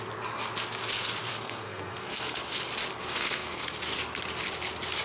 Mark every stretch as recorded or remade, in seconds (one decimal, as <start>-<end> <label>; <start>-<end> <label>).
0.0-1.3 recorded; 1.3-2.4 remade; 2.4-3.1 recorded; 3.1-3.8 remade; 3.8-5.0 recorded